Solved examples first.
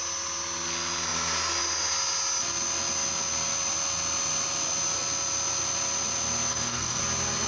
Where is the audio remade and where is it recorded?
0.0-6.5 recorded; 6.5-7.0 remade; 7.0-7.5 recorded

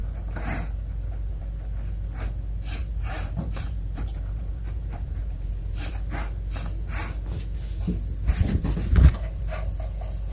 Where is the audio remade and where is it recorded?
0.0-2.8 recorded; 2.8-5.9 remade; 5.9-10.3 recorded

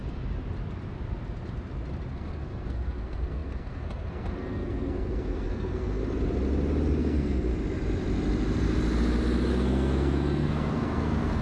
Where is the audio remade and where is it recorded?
0.0-2.1 recorded; 2.1-6.0 remade; 6.0-7.0 recorded; 7.0-7.5 remade; 7.5-9.5 recorded; 9.5-11.4 remade